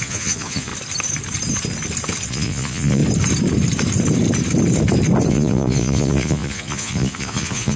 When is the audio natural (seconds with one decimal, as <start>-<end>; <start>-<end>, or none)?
0.7-2.3; 3.0-5.3